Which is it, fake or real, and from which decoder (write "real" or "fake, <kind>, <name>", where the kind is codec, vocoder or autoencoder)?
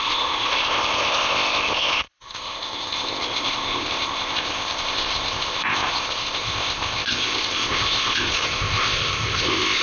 fake, codec, ZipCodec